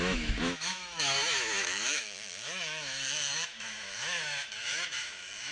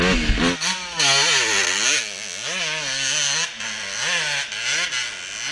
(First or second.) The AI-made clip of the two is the first